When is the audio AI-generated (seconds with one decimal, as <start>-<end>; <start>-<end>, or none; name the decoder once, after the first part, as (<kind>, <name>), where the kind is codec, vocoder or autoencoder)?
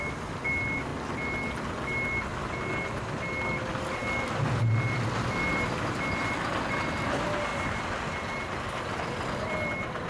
none